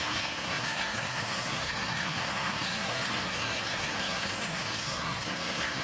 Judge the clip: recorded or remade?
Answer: remade